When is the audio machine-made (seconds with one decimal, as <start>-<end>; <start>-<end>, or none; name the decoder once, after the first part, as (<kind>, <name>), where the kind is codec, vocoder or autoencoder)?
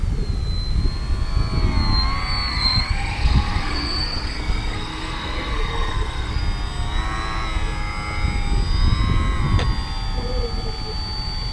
2.5-6.4 (codec, SNAC)